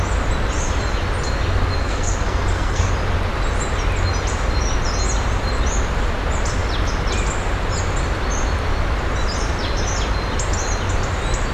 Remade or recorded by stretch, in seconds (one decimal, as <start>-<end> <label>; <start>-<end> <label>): 0.0-1.8 recorded; 1.8-2.9 remade; 2.9-11.5 recorded